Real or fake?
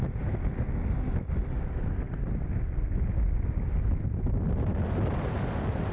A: real